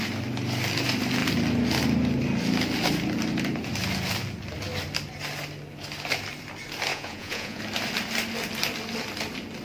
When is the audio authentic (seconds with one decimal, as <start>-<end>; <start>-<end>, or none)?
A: 0.0-6.9; 7.6-9.6

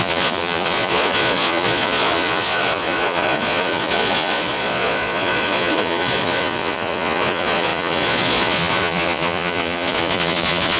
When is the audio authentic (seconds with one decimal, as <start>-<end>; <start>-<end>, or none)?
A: none

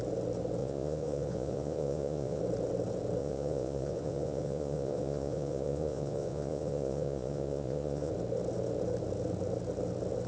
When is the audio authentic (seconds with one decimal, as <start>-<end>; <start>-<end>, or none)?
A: 0.0-0.6; 2.4-3.2; 8.1-10.3

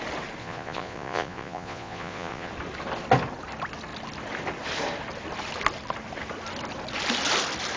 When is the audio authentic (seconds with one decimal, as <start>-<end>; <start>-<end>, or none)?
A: 0.0-0.4; 2.5-7.8